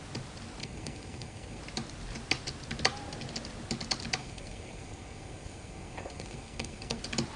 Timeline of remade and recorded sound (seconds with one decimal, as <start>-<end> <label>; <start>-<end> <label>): 0.0-0.6 recorded; 0.6-1.6 remade; 1.6-4.2 recorded; 4.2-7.0 remade; 7.0-7.4 recorded